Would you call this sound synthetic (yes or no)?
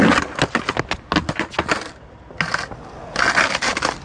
no